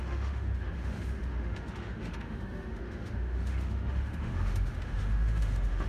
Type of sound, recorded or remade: remade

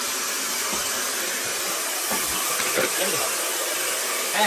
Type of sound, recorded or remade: recorded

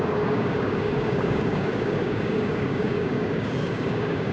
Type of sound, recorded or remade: remade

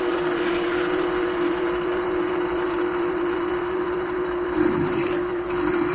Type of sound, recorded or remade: remade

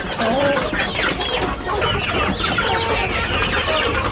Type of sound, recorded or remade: recorded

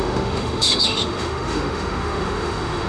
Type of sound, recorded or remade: remade